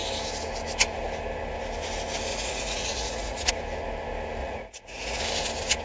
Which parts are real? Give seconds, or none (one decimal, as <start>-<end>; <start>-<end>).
0.0-2.3; 3.5-4.4; 5.2-5.8